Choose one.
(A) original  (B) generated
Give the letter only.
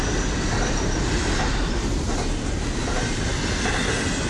A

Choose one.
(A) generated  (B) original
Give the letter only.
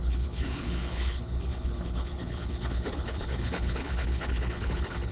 A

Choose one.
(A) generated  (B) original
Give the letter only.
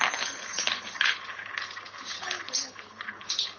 A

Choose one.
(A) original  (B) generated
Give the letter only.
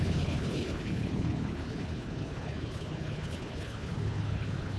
B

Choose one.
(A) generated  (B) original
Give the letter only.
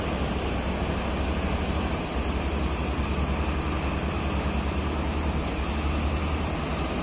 B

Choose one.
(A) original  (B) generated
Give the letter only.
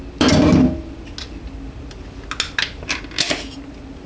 A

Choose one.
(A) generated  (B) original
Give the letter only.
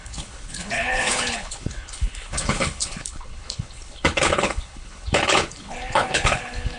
A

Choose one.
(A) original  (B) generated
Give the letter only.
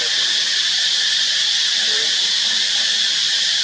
A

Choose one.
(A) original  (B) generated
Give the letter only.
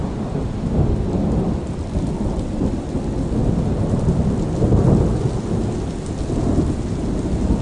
A